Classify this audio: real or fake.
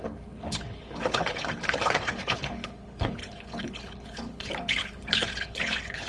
fake